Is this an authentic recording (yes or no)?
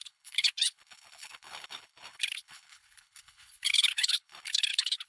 no